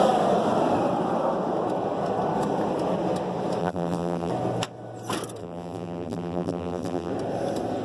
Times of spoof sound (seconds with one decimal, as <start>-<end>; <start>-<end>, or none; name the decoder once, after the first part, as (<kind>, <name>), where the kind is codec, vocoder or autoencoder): 3.6-4.3 (vocoder, BigVGAN v2); 5.4-7.1